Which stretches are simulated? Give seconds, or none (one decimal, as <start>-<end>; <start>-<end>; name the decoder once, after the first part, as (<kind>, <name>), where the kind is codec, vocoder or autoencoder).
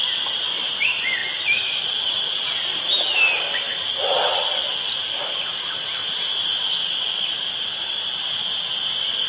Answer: 0.0-1.2 (vocoder, BigVGAN v2); 5.3-6.0; 6.5-9.3